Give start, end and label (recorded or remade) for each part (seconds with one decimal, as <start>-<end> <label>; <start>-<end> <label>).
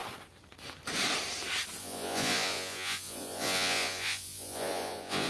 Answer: 0.0-1.8 recorded; 1.8-5.3 remade